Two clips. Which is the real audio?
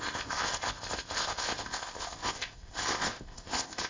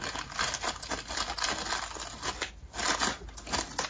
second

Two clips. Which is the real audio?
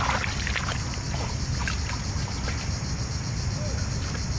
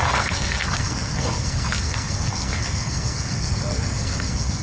first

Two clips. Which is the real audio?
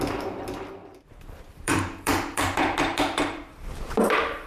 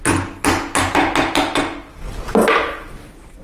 second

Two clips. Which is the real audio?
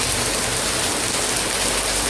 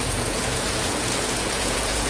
first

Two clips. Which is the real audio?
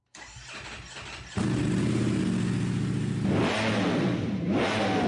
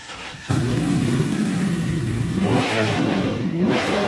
first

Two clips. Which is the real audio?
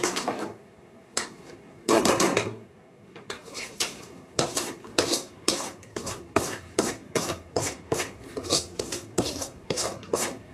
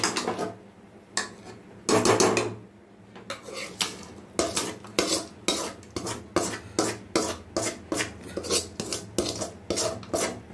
second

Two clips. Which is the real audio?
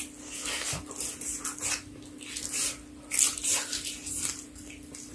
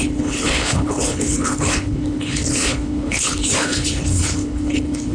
first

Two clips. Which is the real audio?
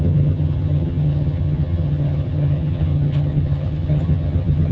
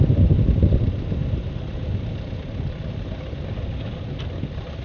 second